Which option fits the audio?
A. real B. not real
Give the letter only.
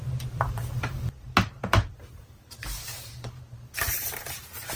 B